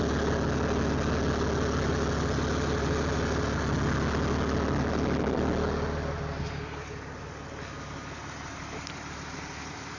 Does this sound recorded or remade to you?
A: recorded